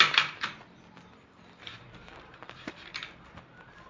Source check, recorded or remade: remade